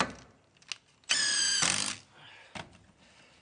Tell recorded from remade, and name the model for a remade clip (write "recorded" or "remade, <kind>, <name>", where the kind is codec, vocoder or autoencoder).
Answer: recorded